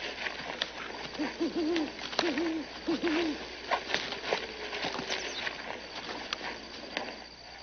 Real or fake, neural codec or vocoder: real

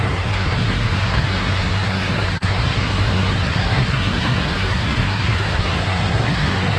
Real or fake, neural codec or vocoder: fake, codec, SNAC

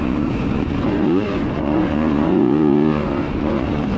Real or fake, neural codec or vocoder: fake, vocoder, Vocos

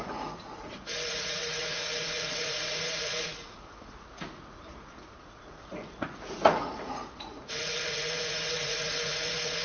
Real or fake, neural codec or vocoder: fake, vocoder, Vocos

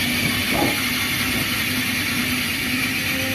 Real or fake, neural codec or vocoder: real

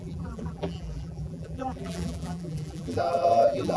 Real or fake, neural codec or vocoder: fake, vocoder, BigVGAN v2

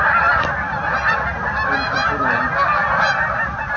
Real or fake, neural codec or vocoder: real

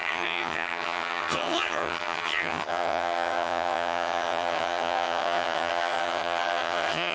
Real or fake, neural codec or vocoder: fake, vocoder, HiFi-GAN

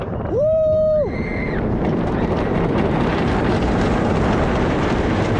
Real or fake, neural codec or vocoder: fake, vocoder, BigVGAN v2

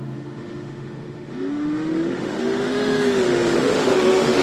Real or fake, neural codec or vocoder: fake, autoencoder, DAC-VAE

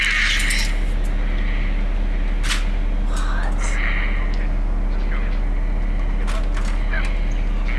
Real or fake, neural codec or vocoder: real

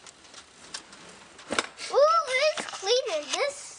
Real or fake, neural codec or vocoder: real